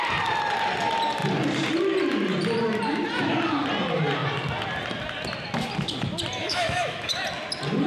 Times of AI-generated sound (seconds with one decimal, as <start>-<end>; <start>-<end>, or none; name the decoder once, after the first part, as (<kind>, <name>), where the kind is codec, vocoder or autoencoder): 6.4-7.2 (autoencoder, DAC-VAE)